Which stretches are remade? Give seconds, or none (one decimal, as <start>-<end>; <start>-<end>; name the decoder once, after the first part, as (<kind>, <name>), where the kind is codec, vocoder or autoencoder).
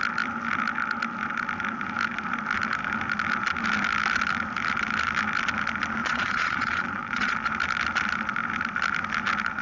6.0-7.5 (vocoder, Vocos)